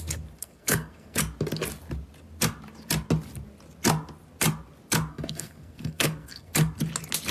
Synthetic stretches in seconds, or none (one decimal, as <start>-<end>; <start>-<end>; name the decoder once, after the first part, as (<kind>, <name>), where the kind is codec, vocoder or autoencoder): 0.4-1.2 (codec, SNAC); 5.1-6.5